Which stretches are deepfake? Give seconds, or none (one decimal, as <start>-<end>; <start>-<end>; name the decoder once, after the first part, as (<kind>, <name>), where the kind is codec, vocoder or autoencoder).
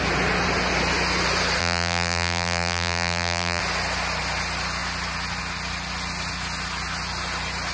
1.6-3.6 (vocoder, BigVGAN v2)